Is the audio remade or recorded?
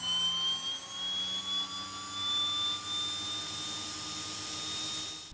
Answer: recorded